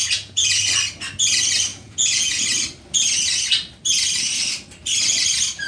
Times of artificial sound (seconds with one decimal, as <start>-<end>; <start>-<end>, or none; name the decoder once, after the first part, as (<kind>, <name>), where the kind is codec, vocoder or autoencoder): 0.0-0.6 (vocoder, Vocos); 1.7-2.4